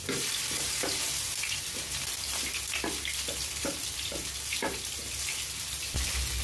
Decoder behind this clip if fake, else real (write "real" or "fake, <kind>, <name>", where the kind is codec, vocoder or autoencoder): fake, vocoder, BigVGAN v2